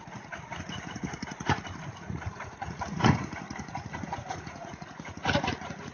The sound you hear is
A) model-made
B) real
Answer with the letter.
A